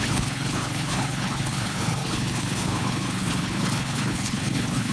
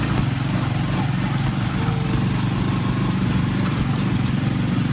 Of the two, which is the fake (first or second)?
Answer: first